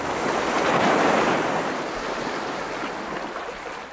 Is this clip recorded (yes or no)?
yes